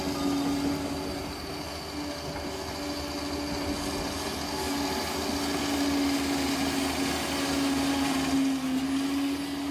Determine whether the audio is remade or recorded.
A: recorded